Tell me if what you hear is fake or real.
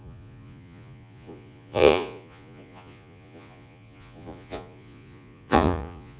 fake